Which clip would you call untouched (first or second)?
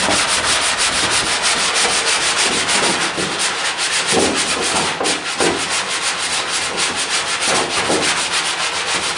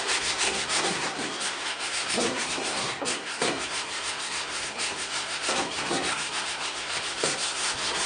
first